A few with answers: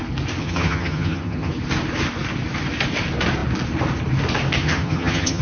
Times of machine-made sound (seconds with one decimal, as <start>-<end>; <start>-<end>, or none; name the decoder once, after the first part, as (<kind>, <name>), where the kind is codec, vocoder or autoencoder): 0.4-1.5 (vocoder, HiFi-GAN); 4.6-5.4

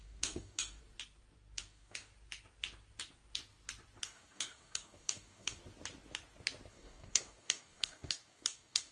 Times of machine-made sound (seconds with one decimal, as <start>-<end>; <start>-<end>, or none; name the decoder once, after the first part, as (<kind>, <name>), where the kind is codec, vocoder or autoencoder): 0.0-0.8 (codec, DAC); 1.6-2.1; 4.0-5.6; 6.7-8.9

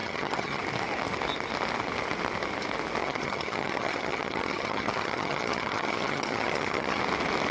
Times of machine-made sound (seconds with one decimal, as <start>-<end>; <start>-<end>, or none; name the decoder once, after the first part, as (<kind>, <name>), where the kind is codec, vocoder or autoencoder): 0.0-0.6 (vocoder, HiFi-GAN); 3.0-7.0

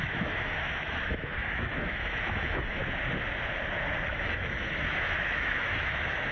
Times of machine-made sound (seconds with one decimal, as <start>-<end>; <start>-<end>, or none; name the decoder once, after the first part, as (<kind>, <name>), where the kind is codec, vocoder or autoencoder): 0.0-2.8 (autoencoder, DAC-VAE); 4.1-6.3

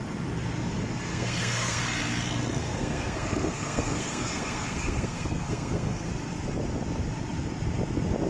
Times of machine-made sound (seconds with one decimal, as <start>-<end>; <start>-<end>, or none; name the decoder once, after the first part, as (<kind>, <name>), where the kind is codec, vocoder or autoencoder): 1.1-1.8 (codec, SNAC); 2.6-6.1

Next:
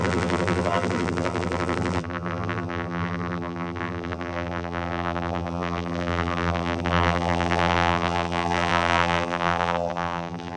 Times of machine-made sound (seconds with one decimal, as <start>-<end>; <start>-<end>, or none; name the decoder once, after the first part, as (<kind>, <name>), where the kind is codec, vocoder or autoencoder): 0.0-10.6 (vocoder, BigVGAN v2)